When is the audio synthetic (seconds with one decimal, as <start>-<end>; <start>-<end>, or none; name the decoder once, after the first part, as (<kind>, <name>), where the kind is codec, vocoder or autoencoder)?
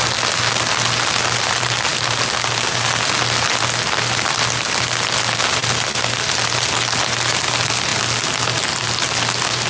none